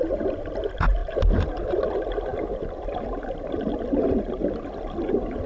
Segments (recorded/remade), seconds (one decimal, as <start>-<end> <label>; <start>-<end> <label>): 0.0-5.5 recorded